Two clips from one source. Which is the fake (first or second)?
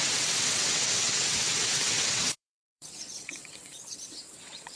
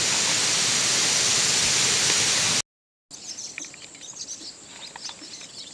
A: first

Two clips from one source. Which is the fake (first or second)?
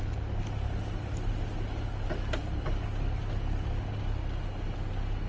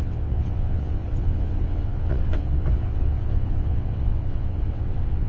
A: second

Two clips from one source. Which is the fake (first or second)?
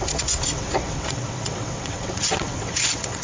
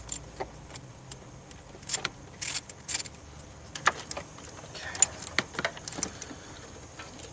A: first